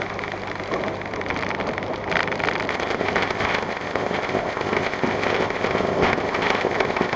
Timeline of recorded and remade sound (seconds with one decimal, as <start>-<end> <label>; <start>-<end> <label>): 0.0-2.7 recorded; 2.7-7.2 remade